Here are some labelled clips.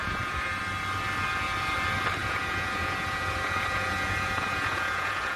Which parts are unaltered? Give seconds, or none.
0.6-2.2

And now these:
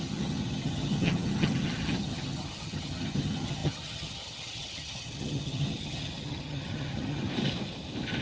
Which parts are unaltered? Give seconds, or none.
7.3-8.2

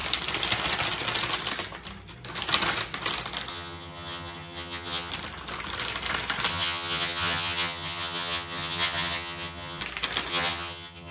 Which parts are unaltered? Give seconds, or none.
0.0-3.5; 5.1-6.5; 9.8-10.3

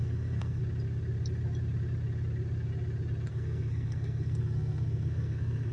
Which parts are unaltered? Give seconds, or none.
0.6-3.3

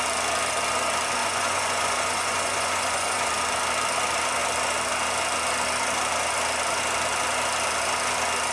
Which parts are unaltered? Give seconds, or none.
0.0-1.2; 3.3-8.5